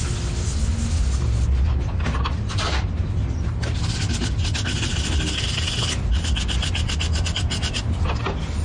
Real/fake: real